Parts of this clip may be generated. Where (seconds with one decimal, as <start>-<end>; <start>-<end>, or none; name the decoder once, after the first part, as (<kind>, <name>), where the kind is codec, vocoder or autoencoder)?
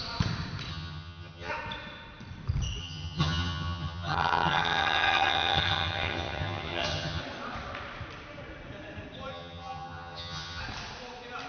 0.7-1.5 (vocoder, HiFi-GAN); 2.8-7.2; 9.3-10.6